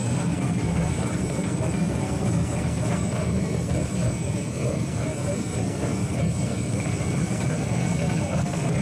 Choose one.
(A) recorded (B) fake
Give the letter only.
B